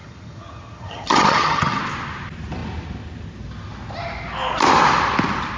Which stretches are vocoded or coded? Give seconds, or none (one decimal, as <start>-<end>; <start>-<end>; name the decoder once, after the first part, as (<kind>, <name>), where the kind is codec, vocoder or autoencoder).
0.0-1.8 (vocoder, HiFi-GAN)